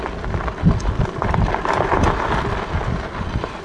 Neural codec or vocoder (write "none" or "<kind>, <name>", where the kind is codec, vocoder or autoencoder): none